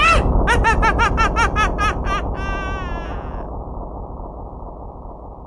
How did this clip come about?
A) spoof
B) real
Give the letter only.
B